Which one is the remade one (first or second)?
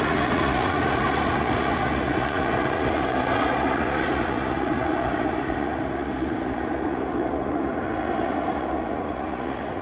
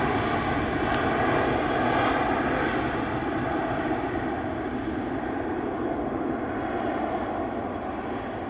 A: first